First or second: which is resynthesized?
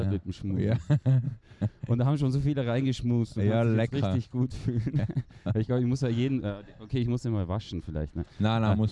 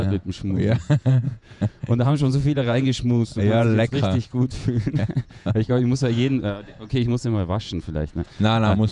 second